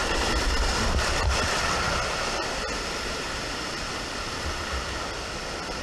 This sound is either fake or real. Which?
real